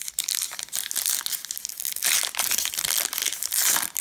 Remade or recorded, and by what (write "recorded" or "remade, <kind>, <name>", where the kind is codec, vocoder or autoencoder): recorded